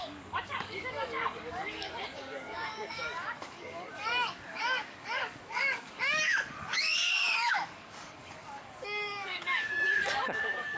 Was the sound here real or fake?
fake